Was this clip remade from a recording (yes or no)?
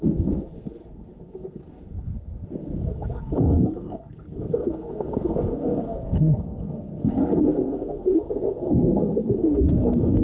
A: yes